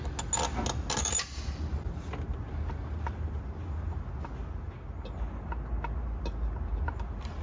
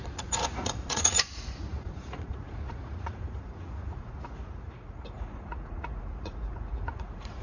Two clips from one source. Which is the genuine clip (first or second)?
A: first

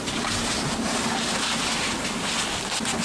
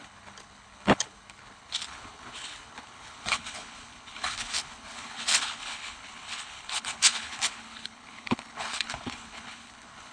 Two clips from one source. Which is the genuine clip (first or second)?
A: first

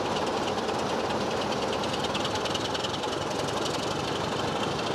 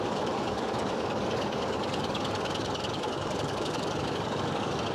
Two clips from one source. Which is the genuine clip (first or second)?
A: first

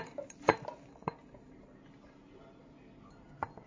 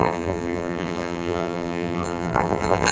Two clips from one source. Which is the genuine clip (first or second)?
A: first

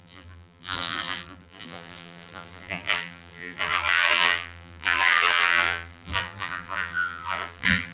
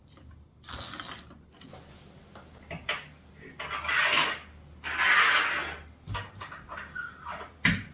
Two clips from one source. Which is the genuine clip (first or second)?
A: second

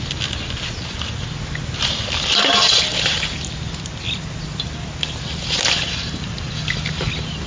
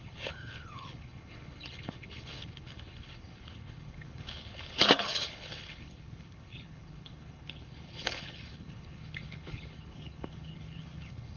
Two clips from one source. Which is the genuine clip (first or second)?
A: first